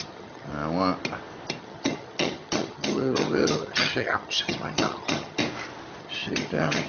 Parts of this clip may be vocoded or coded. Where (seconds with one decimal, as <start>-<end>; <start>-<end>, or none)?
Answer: 0.0-0.5; 1.6-5.4; 6.0-6.9